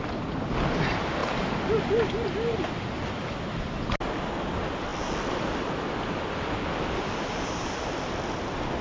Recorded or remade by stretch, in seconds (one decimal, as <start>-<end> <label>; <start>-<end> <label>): 0.0-8.8 recorded